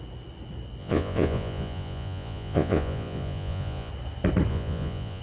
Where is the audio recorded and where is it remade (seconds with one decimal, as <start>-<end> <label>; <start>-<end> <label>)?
0.0-0.8 recorded; 0.8-3.9 remade; 3.9-4.5 recorded; 4.5-5.2 remade